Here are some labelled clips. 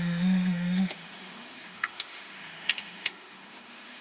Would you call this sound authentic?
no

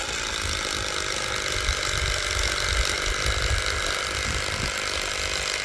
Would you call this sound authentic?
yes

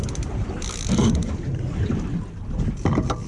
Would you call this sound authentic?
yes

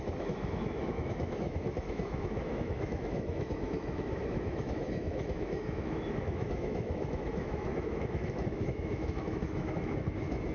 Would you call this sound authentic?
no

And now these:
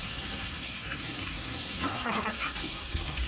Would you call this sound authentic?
no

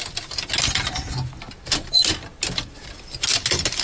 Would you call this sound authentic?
yes